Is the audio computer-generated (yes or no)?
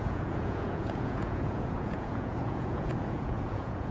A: yes